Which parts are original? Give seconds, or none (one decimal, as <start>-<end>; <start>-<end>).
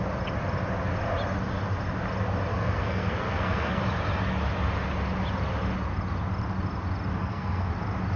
0.0-2.5; 3.8-7.2; 7.7-8.2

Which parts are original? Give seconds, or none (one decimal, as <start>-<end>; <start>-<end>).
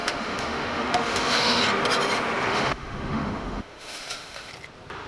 1.6-2.5; 4.5-5.1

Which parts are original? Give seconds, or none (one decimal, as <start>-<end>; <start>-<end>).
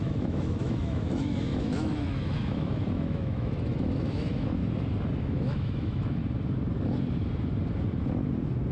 4.6-5.2; 6.2-8.7